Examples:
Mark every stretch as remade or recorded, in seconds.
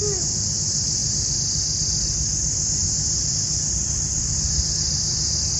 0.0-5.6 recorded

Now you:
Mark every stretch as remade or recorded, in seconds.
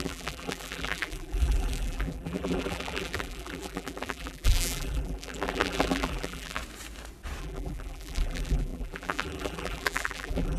0.0-6.6 remade; 6.6-7.4 recorded; 7.4-10.6 remade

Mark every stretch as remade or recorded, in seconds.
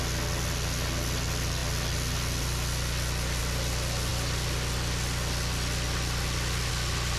0.0-7.2 recorded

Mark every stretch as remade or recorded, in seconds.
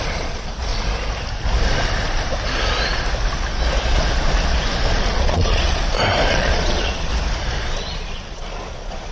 0.0-0.7 remade; 0.7-4.9 recorded; 4.9-5.8 remade; 5.8-6.3 recorded; 6.3-7.1 remade; 7.1-7.7 recorded; 7.7-9.1 remade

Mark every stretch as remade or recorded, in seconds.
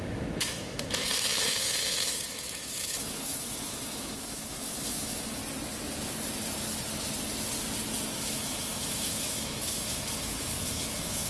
0.0-5.4 remade; 5.4-8.1 recorded; 8.1-11.3 remade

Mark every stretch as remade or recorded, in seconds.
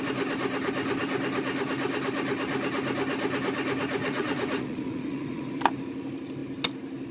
0.0-4.0 recorded; 4.0-5.5 remade; 5.5-7.1 recorded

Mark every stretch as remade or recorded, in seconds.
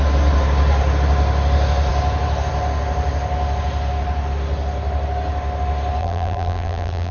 0.0-6.0 recorded; 6.0-7.1 remade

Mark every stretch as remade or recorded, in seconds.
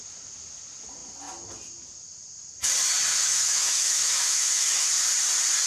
0.0-3.1 recorded; 3.1-4.9 remade; 4.9-5.7 recorded